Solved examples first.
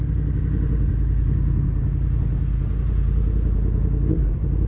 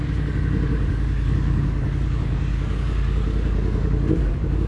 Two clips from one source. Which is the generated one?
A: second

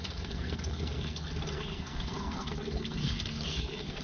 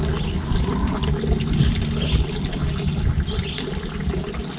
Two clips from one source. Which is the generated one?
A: first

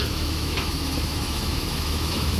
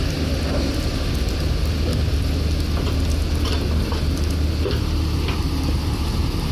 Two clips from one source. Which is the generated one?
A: first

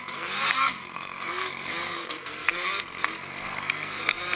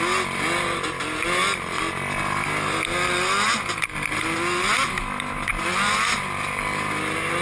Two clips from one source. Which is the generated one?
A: first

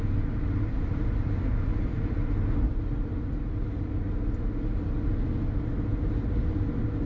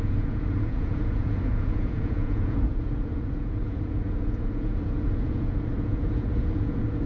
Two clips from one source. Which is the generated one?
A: second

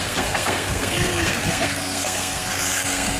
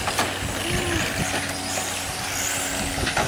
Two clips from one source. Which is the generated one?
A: first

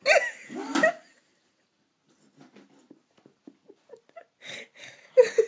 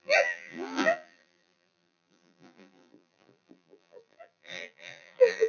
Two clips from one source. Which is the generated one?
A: second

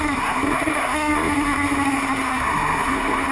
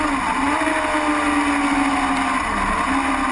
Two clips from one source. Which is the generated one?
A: first